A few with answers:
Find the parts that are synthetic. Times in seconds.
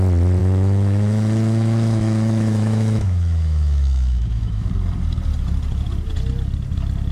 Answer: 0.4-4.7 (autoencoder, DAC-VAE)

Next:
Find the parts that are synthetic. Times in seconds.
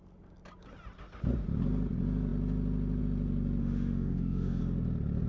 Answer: 3.6-4.6 (autoencoder, DAC-VAE)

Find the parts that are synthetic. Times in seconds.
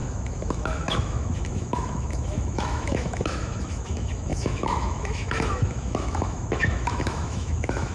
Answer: 0.0-7.9 (autoencoder, DAC-VAE)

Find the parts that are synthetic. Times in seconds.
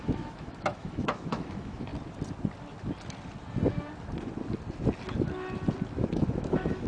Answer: 0.0-1.9 (autoencoder, DAC-VAE); 6.0-6.9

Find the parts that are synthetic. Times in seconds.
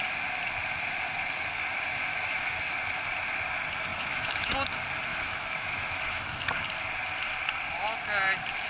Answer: 2.1-2.6 (autoencoder, DAC-VAE); 3.9-4.5; 5.1-6.4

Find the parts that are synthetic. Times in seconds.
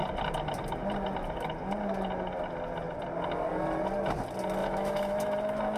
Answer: 4.6-5.8 (autoencoder, DAC-VAE)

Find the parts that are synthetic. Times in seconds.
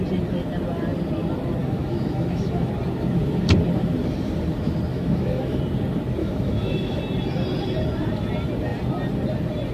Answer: 1.6-2.7 (autoencoder, DAC-VAE); 4.9-5.6; 6.2-7.0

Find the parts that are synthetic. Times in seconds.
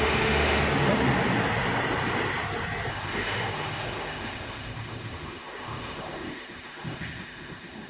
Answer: 0.0-0.6 (autoencoder, DAC-VAE); 2.9-7.9